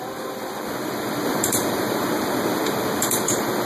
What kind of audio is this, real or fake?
fake